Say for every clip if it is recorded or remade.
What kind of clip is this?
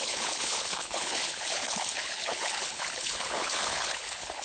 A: remade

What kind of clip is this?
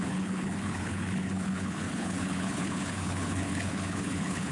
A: remade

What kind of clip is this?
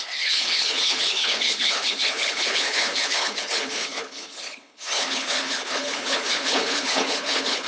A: remade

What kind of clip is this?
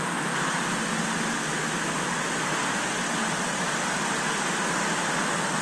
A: recorded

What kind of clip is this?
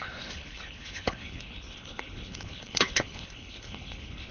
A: remade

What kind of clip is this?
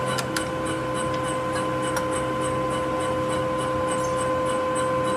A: recorded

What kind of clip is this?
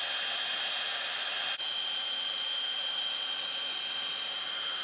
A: recorded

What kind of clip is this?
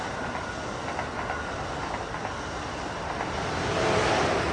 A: recorded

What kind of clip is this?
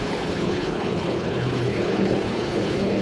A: remade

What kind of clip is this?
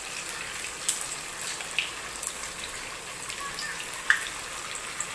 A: recorded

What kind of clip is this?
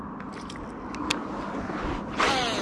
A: recorded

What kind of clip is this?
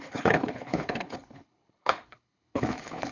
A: remade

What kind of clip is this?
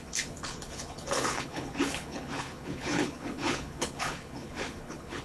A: remade